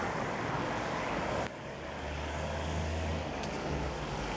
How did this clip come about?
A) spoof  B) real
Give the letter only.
A